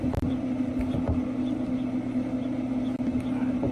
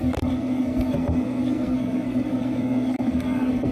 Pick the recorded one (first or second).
first